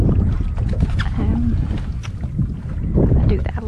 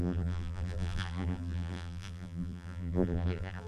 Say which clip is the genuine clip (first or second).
first